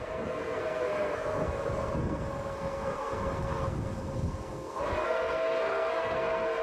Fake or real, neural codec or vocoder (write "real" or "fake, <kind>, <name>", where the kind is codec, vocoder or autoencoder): fake, codec, SNAC